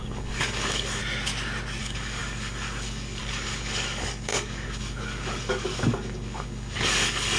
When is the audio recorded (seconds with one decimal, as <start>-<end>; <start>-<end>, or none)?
1.0-1.8